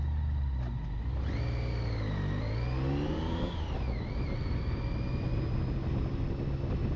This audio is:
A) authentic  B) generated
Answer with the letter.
A